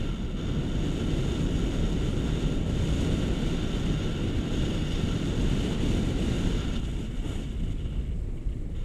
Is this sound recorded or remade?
recorded